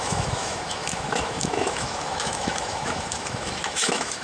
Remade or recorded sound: remade